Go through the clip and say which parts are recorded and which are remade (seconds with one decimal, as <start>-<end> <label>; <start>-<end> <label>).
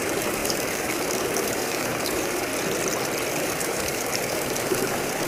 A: 0.0-2.5 remade; 2.5-3.3 recorded; 3.3-5.3 remade